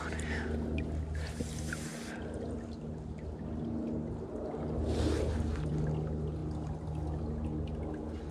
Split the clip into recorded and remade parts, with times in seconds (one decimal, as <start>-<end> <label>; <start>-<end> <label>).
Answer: 0.0-8.3 recorded

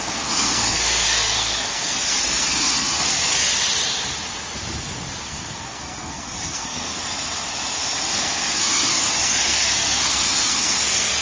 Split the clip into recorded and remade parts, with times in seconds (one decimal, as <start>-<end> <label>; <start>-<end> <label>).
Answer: 0.0-3.3 remade; 3.3-5.2 recorded; 5.2-7.0 remade; 7.0-8.1 recorded; 8.1-11.2 remade

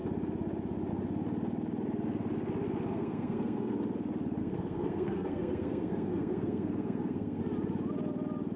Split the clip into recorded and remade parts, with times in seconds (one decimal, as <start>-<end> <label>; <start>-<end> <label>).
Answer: 0.0-2.9 recorded; 2.9-3.7 remade; 3.7-4.4 recorded; 4.4-7.4 remade; 7.4-8.6 recorded

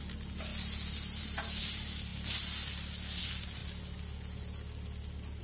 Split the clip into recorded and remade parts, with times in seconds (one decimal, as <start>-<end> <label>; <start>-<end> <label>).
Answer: 0.0-5.4 recorded

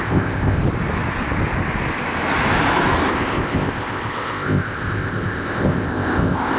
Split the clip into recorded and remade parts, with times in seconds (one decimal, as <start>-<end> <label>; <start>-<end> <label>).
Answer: 0.0-0.6 remade; 0.6-3.1 recorded; 3.1-6.6 remade

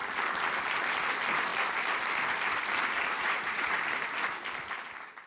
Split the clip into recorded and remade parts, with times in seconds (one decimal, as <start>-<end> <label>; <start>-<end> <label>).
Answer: 0.0-3.2 recorded; 3.2-3.8 remade; 3.8-5.3 recorded

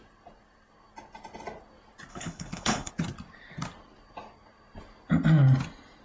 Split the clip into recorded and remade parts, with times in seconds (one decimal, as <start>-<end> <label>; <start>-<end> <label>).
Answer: 0.0-2.1 recorded; 2.1-2.9 remade; 2.9-6.0 recorded

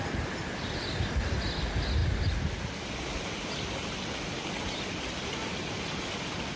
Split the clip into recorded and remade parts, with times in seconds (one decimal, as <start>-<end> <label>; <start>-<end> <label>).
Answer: 0.0-6.6 recorded